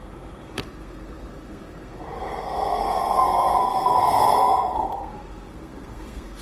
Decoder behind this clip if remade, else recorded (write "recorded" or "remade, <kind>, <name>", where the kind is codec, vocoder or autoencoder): remade, codec, SNAC